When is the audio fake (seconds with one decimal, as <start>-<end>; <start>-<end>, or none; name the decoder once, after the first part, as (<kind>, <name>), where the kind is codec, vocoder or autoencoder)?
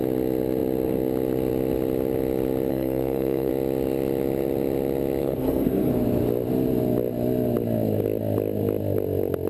2.7-3.5 (codec, SNAC); 5.2-5.9